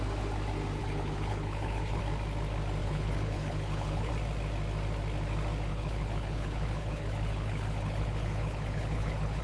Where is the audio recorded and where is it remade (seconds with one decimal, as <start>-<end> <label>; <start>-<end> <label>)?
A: 0.0-0.8 recorded; 0.8-2.0 remade; 2.0-2.8 recorded; 2.8-4.1 remade; 4.1-5.7 recorded; 5.7-9.4 remade